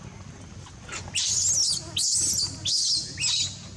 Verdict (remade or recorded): recorded